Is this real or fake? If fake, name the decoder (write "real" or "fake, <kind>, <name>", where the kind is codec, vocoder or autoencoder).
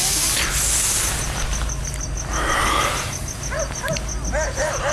real